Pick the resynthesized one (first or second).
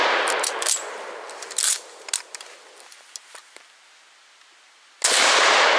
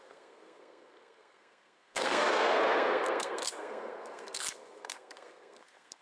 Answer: second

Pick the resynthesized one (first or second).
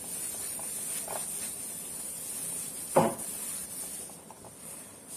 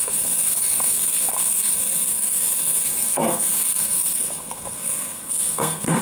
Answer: second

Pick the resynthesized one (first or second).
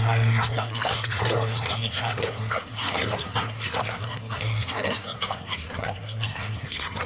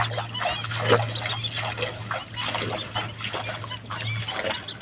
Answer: first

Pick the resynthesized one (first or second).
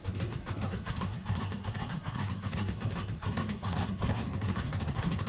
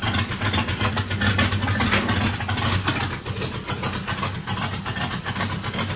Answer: first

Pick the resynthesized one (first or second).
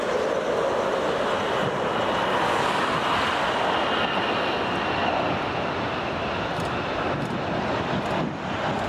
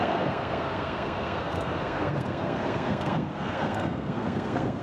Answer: second